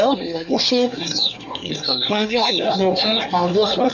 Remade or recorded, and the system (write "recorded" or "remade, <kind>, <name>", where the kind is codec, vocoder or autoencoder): remade, codec, SNAC